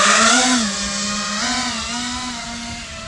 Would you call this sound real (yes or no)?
yes